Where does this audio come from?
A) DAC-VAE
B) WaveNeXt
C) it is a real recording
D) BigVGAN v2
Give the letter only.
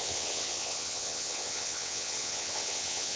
B